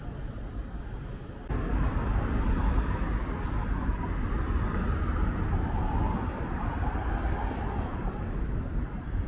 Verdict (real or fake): real